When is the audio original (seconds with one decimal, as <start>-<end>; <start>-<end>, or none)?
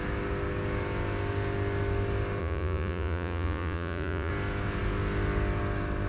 0.0-2.4; 4.3-6.1